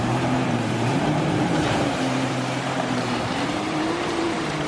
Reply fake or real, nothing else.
fake